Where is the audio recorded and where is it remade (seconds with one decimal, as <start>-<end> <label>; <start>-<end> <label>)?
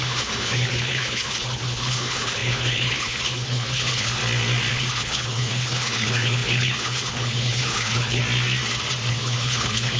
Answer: 0.0-4.2 remade; 4.2-4.7 recorded; 4.7-8.2 remade; 8.2-9.1 recorded; 9.1-10.0 remade